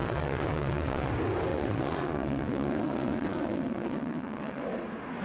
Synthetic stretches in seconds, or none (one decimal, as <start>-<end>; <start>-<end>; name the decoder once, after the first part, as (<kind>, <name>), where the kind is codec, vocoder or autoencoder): 0.0-1.1 (vocoder, WaveNeXt); 1.5-4.6